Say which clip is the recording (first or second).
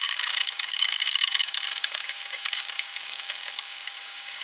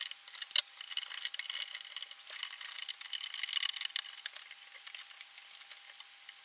second